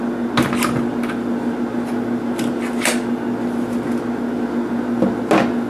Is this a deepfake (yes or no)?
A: no